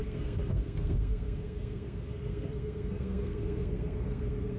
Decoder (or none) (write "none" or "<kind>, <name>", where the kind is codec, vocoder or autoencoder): codec, SNAC